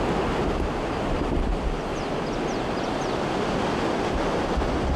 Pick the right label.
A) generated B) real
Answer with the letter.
B